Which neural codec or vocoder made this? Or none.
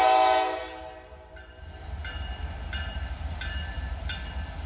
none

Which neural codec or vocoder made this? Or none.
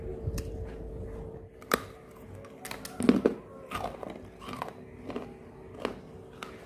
none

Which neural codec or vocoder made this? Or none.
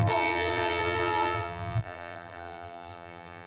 vocoder, BigVGAN v2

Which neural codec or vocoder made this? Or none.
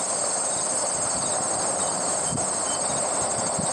none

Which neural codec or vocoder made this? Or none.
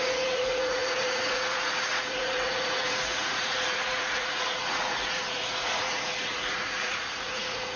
vocoder, Vocos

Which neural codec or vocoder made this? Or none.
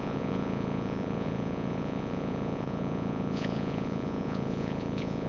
vocoder, Vocos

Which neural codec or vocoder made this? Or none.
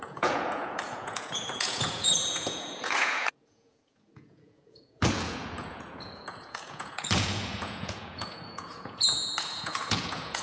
vocoder, Vocos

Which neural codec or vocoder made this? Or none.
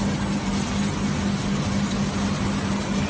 none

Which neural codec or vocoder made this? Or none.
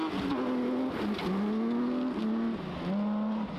none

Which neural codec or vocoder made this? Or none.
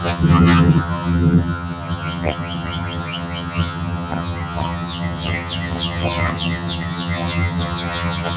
vocoder, HiFi-GAN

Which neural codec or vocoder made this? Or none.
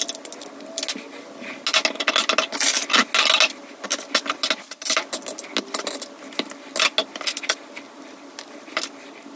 none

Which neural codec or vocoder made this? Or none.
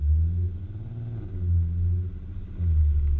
none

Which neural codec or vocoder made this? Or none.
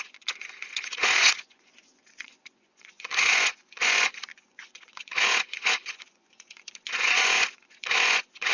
vocoder, Vocos